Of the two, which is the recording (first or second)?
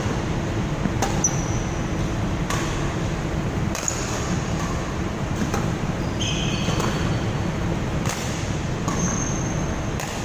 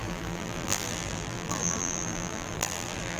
first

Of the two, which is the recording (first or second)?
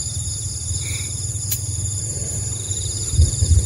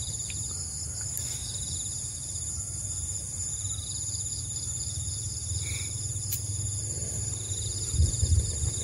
second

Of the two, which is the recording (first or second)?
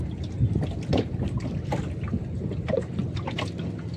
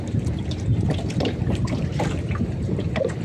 first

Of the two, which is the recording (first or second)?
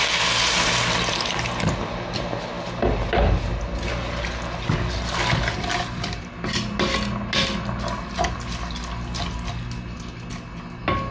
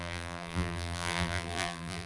first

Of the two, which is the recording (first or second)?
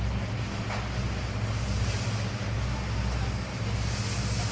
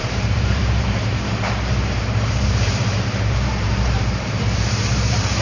first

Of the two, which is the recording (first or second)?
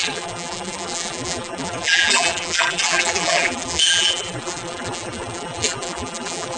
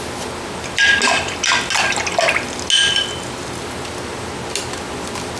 second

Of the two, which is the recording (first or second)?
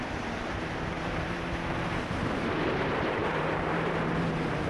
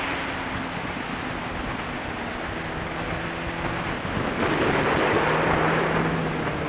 second